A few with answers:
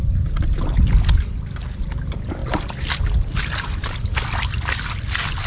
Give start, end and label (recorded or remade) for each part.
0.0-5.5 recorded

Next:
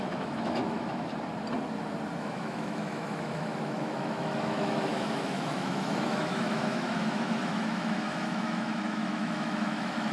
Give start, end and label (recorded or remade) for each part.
0.0-1.1 remade; 1.1-2.2 recorded; 2.2-10.1 remade

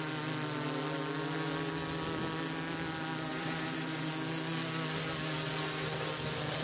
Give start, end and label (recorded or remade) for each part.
0.0-3.3 recorded; 3.3-4.1 remade; 4.1-6.6 recorded

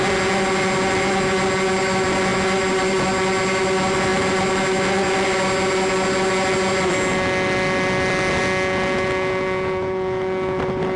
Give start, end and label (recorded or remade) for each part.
0.0-8.4 recorded; 8.4-10.6 remade; 10.6-11.0 recorded